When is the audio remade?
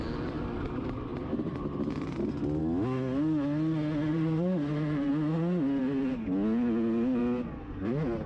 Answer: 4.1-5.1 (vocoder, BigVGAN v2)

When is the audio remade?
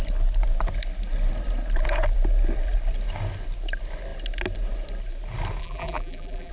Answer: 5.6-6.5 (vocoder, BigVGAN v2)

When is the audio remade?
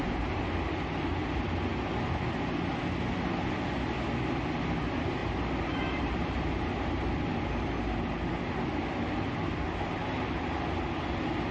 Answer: 5.2-7.7 (vocoder, BigVGAN v2)